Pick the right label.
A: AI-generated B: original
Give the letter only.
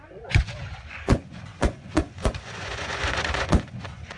A